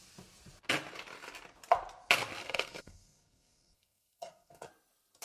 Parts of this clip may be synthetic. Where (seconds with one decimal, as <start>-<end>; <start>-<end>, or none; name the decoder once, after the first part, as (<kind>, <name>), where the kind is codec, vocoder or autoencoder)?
2.4-4.7 (codec, SNAC)